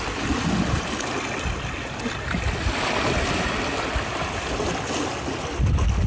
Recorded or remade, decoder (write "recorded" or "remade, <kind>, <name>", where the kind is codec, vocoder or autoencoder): recorded